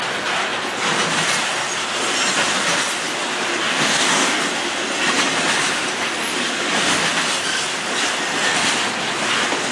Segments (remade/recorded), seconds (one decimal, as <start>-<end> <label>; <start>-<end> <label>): 0.0-3.6 recorded; 3.6-4.5 remade; 4.5-9.7 recorded